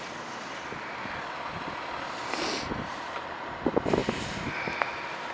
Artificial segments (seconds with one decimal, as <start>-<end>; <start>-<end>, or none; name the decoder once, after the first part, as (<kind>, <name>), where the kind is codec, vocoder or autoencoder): 4.0-4.5 (vocoder, BigVGAN v2)